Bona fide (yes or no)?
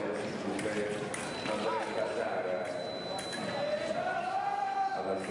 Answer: yes